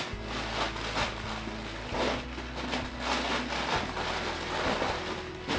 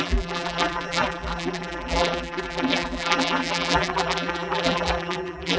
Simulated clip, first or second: second